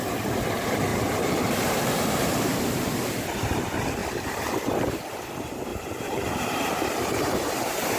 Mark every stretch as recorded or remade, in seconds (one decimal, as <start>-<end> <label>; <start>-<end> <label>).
0.0-0.9 recorded; 0.9-3.2 remade; 3.2-5.7 recorded; 5.7-8.0 remade